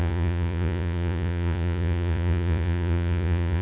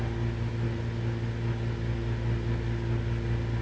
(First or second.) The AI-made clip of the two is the first